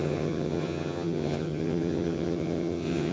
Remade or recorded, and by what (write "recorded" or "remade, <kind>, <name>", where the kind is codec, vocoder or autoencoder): remade, vocoder, HiFi-GAN